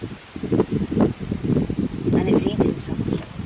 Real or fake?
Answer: real